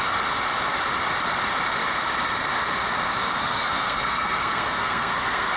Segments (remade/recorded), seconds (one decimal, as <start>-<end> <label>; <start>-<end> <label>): 0.0-3.4 recorded; 3.4-5.6 remade